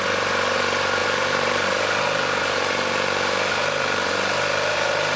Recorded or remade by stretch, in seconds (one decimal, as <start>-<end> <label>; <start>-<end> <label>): 0.0-1.0 recorded; 1.0-4.1 remade; 4.1-5.2 recorded

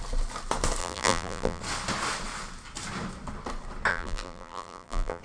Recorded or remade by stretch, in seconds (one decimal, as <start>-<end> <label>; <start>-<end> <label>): 0.0-0.8 recorded; 0.8-1.6 remade; 1.6-3.9 recorded; 3.9-5.2 remade

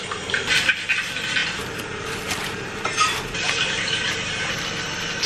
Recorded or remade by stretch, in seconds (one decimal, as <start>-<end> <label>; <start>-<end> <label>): 0.0-1.4 recorded; 1.4-4.6 remade; 4.6-5.3 recorded

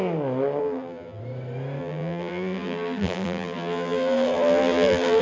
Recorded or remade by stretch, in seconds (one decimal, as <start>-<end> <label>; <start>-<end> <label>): 0.0-0.6 recorded; 0.6-1.2 remade; 1.2-1.8 recorded; 1.8-5.2 remade

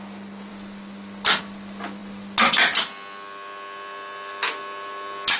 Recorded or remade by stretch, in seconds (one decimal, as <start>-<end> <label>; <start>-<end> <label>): 0.0-5.4 recorded

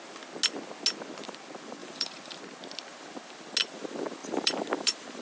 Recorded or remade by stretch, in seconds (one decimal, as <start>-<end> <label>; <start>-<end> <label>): 0.0-1.8 recorded; 1.8-2.4 remade; 2.4-4.2 recorded; 4.2-5.2 remade